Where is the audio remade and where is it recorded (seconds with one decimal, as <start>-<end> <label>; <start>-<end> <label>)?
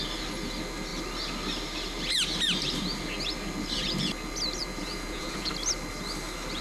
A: 0.0-4.6 recorded; 4.6-5.5 remade; 5.5-6.6 recorded